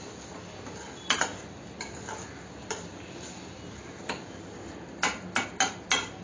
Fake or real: real